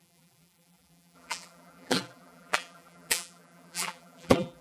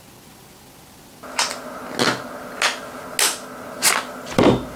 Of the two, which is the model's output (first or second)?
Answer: first